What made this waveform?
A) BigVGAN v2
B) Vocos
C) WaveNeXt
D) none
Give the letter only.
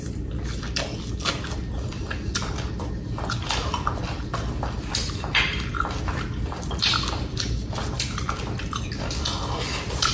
D